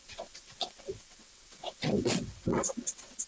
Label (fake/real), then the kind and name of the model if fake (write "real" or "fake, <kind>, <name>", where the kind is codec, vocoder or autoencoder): fake, vocoder, WaveNeXt